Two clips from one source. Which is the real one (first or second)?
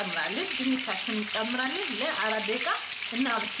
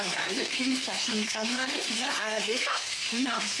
first